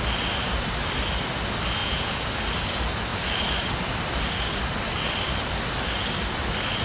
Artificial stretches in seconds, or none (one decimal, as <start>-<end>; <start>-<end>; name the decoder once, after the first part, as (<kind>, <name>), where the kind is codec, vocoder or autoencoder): 1.8-2.3 (vocoder, Vocos)